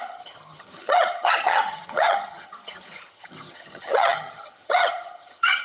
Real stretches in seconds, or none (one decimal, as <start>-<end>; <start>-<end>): none